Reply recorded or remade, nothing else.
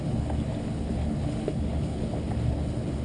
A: remade